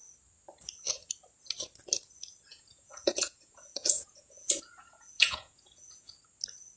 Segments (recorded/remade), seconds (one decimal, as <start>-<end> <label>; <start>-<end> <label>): 0.0-2.5 recorded; 2.5-6.1 remade; 6.1-6.8 recorded

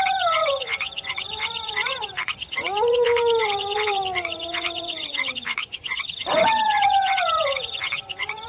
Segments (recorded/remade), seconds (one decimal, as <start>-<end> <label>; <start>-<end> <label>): 0.0-8.5 remade

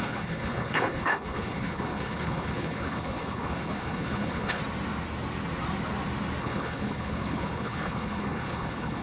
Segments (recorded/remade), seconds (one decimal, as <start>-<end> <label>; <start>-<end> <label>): 0.0-4.6 remade; 4.6-6.4 recorded; 6.4-9.0 remade

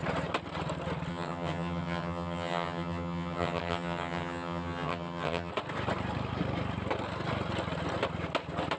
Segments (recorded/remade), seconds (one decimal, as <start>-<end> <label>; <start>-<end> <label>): 0.0-1.1 recorded; 1.1-5.5 remade; 5.5-8.8 recorded

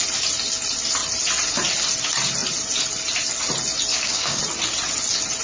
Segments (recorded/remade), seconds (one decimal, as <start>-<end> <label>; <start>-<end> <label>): 0.0-3.9 recorded; 3.9-4.4 remade; 4.4-5.4 recorded

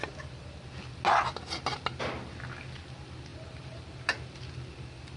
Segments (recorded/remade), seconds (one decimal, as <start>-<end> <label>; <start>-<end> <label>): 0.0-0.6 remade; 0.6-3.3 recorded; 3.3-4.4 remade; 4.4-5.2 recorded